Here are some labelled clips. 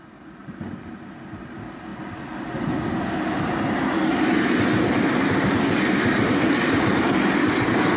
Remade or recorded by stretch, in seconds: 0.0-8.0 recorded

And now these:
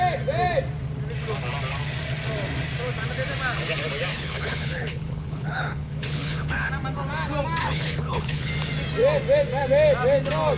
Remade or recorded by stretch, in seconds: 0.0-4.1 recorded; 4.1-6.7 remade; 6.7-7.6 recorded; 7.6-8.5 remade; 8.5-10.6 recorded

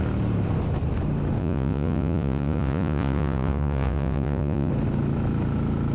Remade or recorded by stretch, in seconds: 0.0-1.4 recorded; 1.4-4.7 remade; 4.7-5.9 recorded

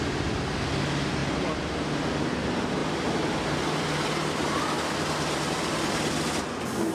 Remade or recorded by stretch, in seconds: 0.0-6.9 recorded